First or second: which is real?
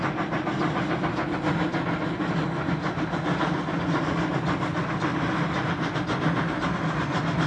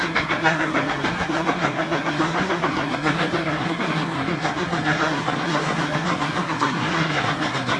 first